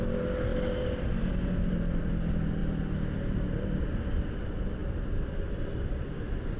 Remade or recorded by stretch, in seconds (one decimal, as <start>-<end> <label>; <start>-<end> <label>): 0.0-6.6 recorded

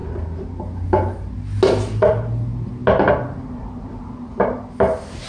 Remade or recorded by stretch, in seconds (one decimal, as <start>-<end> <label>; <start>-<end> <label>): 0.0-5.3 recorded

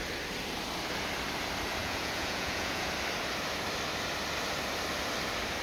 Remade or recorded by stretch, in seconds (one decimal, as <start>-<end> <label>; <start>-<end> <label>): 0.0-1.8 recorded; 1.8-2.9 remade; 2.9-5.6 recorded

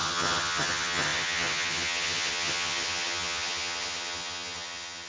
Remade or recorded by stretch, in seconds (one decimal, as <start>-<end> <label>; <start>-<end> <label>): 0.0-5.1 remade

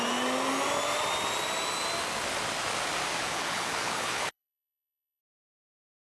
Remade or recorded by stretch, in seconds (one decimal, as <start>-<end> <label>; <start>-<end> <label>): 0.0-3.2 recorded; 3.2-5.2 remade; 5.2-6.1 recorded

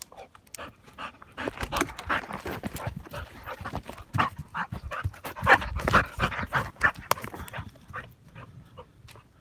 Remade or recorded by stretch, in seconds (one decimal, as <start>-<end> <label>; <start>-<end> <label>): 0.0-9.4 recorded